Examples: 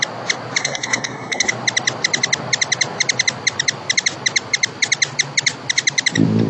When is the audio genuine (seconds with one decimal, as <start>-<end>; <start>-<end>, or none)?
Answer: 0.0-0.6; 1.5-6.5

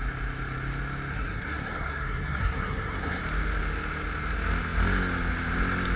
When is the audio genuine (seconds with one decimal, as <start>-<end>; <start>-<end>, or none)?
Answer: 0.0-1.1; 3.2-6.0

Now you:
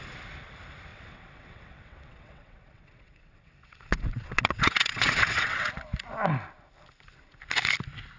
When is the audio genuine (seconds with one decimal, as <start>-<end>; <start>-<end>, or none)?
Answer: 0.0-0.9; 5.7-8.2